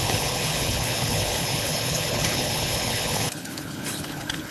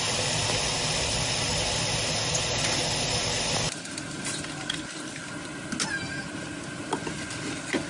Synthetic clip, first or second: first